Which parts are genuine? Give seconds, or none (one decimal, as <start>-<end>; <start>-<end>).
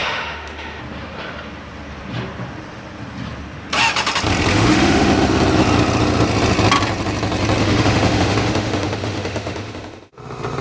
0.8-4.5; 5.1-7.6; 10.2-10.6